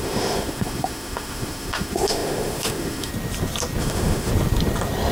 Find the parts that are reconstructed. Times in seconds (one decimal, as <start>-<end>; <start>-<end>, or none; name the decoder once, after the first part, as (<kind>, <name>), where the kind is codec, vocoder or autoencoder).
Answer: 0.0-3.1 (autoencoder, DAC-VAE); 3.8-4.3